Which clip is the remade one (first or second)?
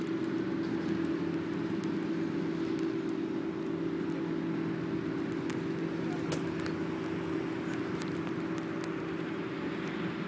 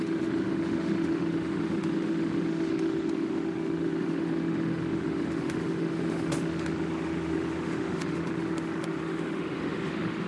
second